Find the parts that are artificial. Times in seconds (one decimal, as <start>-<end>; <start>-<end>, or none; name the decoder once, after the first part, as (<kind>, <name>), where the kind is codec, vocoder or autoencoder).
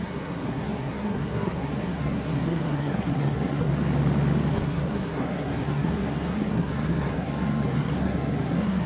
0.0-3.7 (codec, SNAC); 4.5-8.9